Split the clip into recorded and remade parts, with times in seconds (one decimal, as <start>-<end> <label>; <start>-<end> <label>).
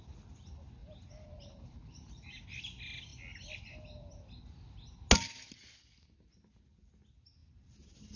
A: 0.0-0.8 recorded; 0.8-2.4 remade; 2.4-8.2 recorded